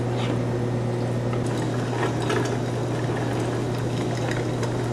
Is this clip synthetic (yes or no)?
no